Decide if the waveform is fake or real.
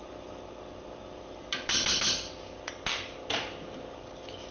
real